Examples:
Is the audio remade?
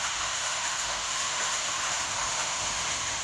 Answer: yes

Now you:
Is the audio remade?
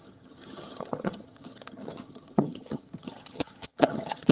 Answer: yes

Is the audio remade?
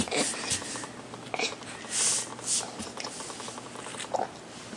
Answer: no